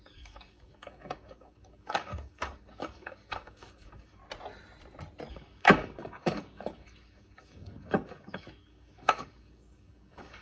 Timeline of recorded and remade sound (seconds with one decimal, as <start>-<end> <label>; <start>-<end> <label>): 0.0-4.2 remade; 4.2-5.3 recorded; 5.3-10.4 remade